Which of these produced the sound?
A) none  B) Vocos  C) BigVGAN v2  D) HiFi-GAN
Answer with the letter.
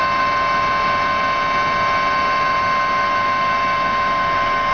A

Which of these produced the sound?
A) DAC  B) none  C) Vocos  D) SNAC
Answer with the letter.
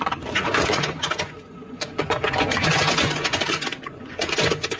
C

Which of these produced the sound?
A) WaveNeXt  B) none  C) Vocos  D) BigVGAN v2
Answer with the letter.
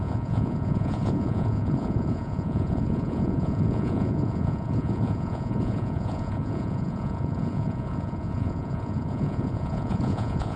C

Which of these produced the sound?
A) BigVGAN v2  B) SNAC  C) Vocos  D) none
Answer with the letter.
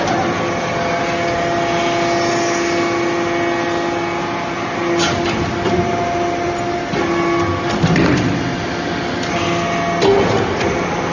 D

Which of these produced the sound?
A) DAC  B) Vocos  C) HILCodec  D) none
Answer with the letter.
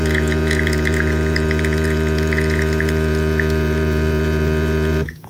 B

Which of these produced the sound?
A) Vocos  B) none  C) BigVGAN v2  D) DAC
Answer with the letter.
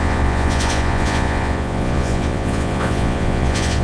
A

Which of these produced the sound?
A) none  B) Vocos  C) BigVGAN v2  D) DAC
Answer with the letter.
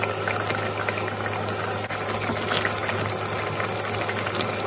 A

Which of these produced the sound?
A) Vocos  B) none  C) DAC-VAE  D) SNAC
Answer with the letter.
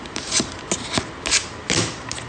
B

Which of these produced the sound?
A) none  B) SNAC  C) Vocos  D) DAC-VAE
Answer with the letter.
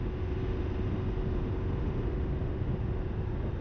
A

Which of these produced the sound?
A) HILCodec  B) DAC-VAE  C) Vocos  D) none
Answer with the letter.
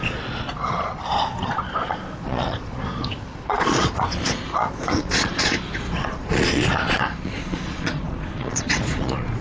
C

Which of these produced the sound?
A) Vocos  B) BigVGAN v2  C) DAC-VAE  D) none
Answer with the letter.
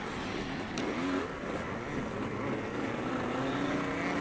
D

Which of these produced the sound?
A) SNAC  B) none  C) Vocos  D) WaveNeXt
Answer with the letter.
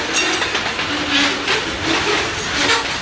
B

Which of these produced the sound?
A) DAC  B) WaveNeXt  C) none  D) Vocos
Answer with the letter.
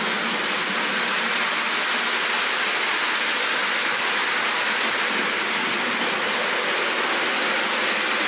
C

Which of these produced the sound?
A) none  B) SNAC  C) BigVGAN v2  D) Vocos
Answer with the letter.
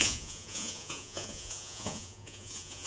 D